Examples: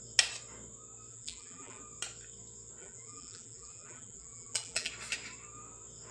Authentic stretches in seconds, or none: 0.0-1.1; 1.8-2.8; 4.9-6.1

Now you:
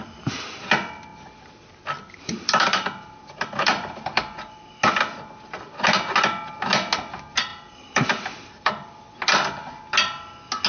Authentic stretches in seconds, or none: 0.0-1.1; 4.6-7.5; 8.7-10.7

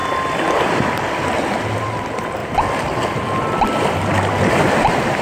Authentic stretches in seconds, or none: 0.0-2.0; 2.4-4.5